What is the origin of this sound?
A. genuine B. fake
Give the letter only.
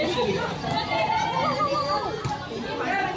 A